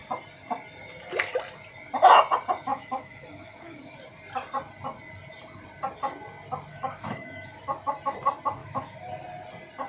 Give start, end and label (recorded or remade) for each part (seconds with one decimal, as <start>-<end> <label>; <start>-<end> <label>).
0.0-2.7 recorded; 2.7-3.8 remade; 3.8-6.7 recorded; 6.7-7.6 remade; 7.6-8.6 recorded; 8.6-9.1 remade; 9.1-9.9 recorded